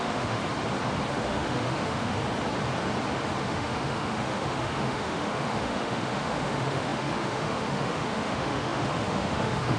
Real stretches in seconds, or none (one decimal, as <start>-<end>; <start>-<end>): 0.4-1.1; 2.2-3.4